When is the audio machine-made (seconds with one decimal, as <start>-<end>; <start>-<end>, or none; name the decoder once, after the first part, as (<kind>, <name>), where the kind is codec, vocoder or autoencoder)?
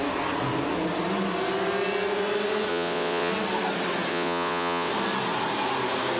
2.7-3.3 (vocoder, WaveNeXt); 4.1-4.9